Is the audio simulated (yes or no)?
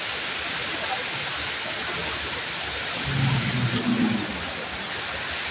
no